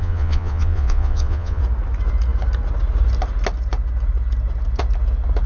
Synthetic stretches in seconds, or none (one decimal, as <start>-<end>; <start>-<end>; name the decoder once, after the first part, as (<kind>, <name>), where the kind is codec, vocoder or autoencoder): 0.0-1.6 (vocoder, Vocos)